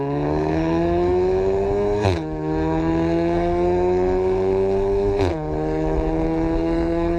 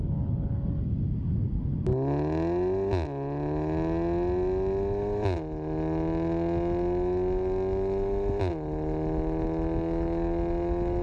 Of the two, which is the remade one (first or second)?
first